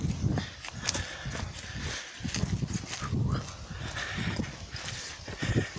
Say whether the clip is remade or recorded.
recorded